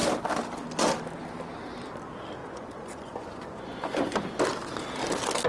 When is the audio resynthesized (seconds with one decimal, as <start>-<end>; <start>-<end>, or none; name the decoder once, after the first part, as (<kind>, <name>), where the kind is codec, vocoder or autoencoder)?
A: 2.4-4.3 (vocoder, Vocos)